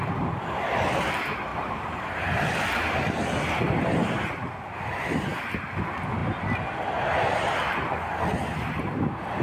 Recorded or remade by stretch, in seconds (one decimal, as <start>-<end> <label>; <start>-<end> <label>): 0.0-1.5 recorded; 1.5-2.4 remade; 2.4-9.4 recorded